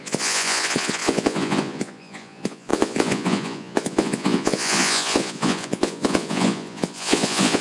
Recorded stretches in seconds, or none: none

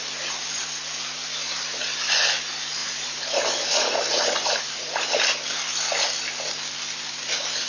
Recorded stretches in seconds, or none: 0.0-2.8; 4.8-7.7

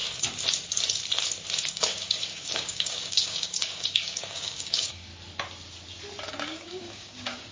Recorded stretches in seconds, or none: 0.0-1.6; 5.1-6.3

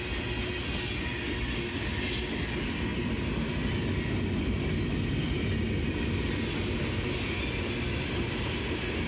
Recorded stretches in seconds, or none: 0.0-9.1

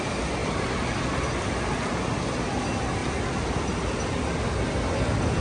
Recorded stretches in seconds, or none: 0.0-5.4

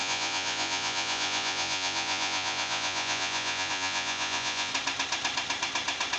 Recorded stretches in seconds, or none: 4.7-6.2